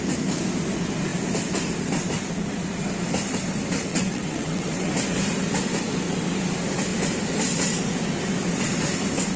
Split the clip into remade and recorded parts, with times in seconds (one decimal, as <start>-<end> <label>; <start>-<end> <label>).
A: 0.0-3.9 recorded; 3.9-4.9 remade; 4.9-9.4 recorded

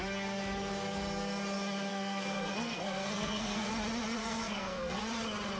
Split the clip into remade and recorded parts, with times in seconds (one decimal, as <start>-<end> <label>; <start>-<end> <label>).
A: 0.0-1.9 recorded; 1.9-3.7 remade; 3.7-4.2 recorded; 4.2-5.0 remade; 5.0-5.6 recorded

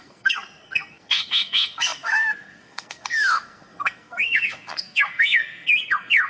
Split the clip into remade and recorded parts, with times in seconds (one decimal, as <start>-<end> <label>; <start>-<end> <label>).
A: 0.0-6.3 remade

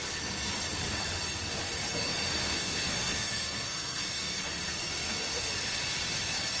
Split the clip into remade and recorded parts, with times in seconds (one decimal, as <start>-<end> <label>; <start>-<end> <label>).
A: 0.0-2.4 recorded; 2.4-4.4 remade; 4.4-4.9 recorded; 4.9-5.5 remade; 5.5-6.6 recorded

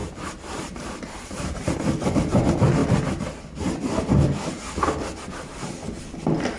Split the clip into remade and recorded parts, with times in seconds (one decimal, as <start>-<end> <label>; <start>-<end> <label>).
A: 0.0-2.8 remade; 2.8-6.6 recorded

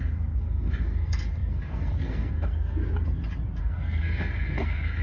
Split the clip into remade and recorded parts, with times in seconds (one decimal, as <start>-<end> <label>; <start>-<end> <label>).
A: 0.0-2.8 remade; 2.8-3.6 recorded; 3.6-5.0 remade

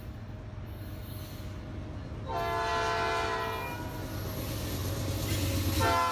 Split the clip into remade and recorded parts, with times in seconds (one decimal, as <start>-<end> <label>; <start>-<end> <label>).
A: 0.0-6.1 recorded